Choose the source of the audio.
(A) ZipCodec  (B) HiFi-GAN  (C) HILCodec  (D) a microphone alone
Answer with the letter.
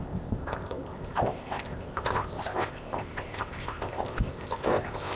A